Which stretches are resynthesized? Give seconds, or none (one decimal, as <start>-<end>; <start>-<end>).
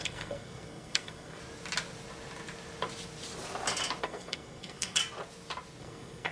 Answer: 0.0-1.4; 4.0-5.0; 5.8-6.3